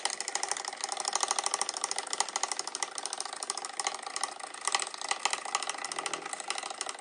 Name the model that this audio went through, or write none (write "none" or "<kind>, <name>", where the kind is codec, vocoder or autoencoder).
none